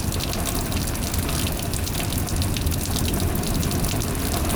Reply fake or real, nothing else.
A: real